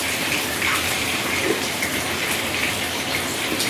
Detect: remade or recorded remade